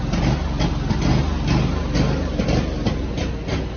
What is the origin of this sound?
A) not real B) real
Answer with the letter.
B